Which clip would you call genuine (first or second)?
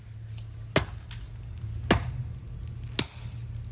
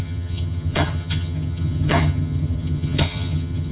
first